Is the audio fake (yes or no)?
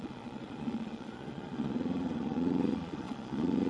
yes